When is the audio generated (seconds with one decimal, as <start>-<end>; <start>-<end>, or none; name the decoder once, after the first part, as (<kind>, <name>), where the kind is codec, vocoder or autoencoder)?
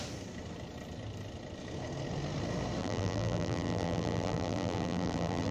2.8-5.5 (vocoder, BigVGAN v2)